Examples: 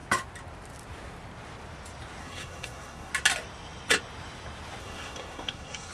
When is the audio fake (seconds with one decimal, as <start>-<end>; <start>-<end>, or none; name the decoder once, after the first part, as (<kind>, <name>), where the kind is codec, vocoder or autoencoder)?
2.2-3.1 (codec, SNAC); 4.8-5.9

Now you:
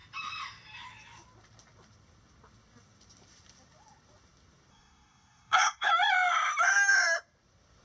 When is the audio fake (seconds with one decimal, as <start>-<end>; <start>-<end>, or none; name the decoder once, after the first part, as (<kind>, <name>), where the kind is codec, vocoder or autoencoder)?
4.7-5.9 (codec, SNAC)

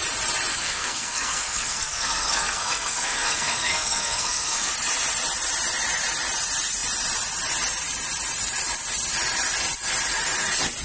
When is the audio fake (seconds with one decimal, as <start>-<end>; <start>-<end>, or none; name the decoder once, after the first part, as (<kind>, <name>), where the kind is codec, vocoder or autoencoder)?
0.5-4.7 (codec, SNAC)

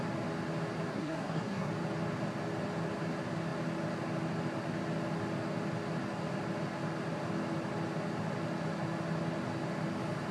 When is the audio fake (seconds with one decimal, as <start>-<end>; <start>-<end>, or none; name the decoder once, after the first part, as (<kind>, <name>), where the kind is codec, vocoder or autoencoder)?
0.9-1.7 (codec, SNAC)

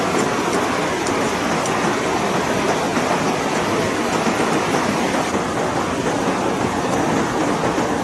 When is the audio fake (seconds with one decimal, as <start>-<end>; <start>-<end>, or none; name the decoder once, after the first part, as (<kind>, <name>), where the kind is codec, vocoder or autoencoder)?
none

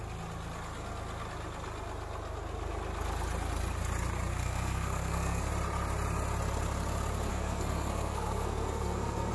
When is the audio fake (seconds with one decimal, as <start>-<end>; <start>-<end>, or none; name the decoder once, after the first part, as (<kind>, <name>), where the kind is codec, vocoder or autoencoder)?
4.3-5.5 (codec, SNAC); 7.3-9.3

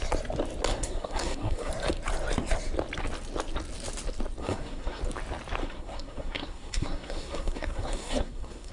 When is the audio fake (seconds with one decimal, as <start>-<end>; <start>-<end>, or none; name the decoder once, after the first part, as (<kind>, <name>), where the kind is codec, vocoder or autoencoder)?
0.7-1.7 (codec, SNAC); 4.4-5.0; 5.6-8.7

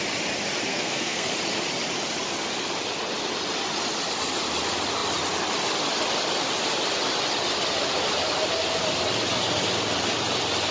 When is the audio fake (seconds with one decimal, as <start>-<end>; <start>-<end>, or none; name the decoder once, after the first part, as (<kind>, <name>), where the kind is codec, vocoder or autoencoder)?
0.7-1.3 (codec, SNAC)